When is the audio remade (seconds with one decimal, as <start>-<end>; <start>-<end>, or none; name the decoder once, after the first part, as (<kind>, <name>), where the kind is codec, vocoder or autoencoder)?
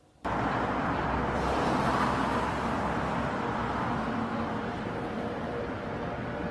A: 4.7-6.0 (vocoder, BigVGAN v2)